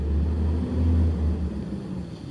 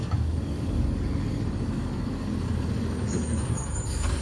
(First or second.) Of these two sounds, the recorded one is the first